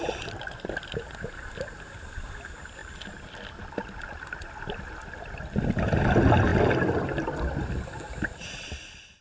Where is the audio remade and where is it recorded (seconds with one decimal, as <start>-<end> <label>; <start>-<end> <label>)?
0.0-9.2 recorded